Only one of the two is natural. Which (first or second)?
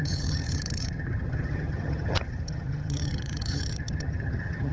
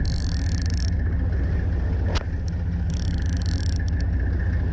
second